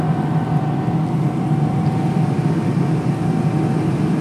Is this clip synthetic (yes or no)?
no